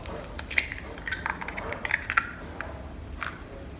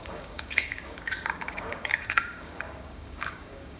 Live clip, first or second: first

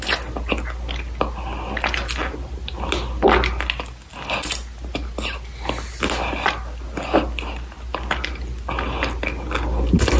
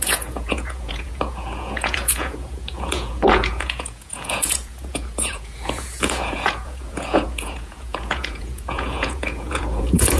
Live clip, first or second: first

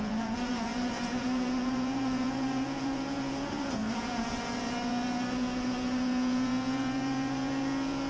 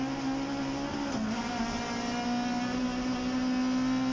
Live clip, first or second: second